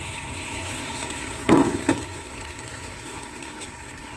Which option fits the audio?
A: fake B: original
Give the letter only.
A